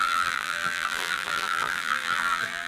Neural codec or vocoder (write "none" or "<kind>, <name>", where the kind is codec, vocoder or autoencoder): vocoder, BigVGAN v2